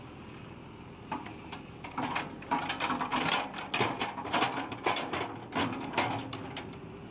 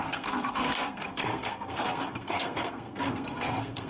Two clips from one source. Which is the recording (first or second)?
first